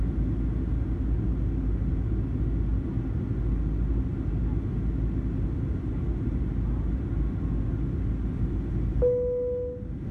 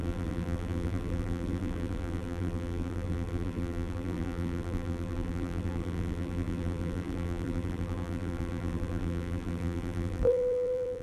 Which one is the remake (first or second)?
second